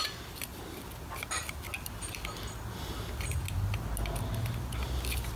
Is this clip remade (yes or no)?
no